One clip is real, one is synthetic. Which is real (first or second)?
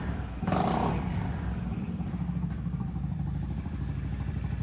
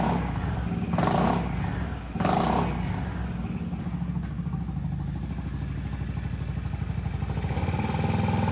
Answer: second